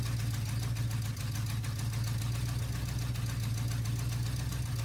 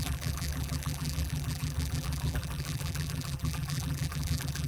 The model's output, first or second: second